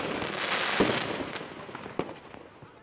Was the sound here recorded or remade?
recorded